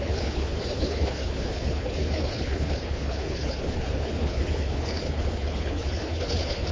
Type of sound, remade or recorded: remade